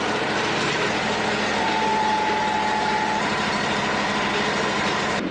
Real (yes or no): no